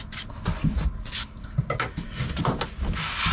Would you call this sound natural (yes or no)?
yes